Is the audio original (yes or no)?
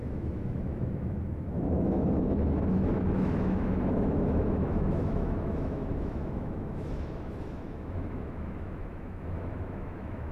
no